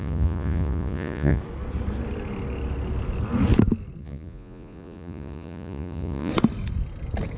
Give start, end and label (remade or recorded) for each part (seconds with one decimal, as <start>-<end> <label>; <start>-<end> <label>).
0.0-1.4 remade; 1.4-4.0 recorded; 4.0-6.3 remade; 6.3-7.4 recorded